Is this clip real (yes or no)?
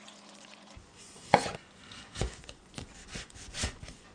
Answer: no